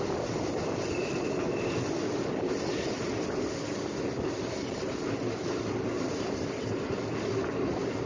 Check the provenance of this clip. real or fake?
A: real